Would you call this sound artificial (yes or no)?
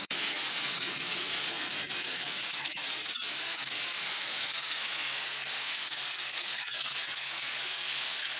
yes